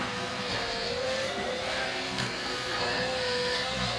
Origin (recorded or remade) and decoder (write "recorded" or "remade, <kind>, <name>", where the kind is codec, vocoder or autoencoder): remade, codec, SNAC